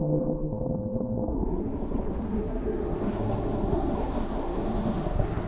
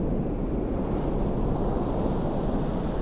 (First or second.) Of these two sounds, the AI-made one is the first